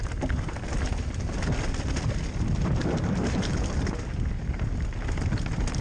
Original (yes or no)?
yes